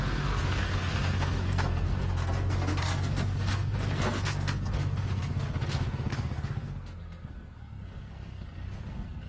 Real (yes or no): no